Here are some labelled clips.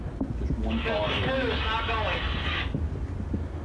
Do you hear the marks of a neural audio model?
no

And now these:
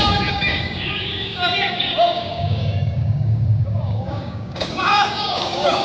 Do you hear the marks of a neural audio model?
yes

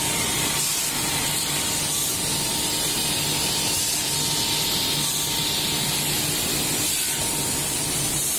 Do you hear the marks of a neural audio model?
no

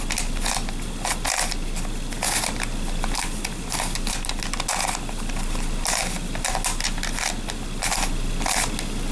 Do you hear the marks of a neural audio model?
no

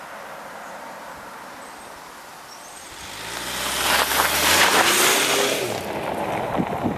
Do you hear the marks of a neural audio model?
no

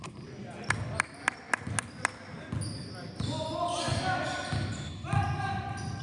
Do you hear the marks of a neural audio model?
no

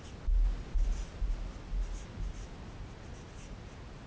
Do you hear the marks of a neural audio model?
no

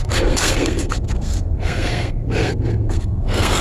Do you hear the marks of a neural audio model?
yes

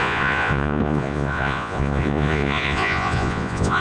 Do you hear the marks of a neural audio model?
yes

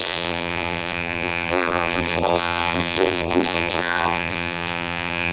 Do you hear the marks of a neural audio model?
yes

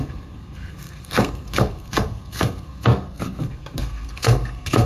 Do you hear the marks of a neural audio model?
yes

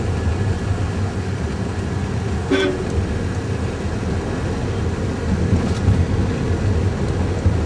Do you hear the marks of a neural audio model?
no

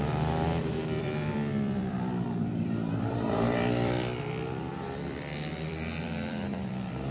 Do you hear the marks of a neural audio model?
yes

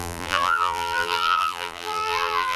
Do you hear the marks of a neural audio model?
yes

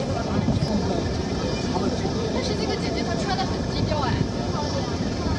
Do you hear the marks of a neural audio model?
yes